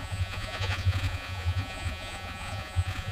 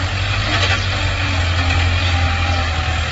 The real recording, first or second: second